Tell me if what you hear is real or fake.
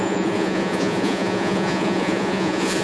fake